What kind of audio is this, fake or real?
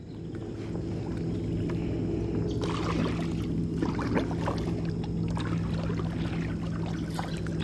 real